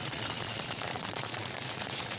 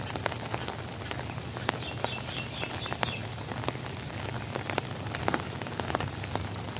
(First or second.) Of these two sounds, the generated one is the first